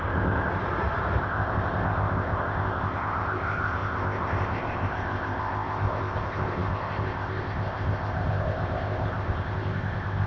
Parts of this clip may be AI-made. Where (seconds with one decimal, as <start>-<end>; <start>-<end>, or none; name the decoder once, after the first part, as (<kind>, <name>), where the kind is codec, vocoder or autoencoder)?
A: 0.0-0.5 (codec, ZipCodec); 1.2-10.3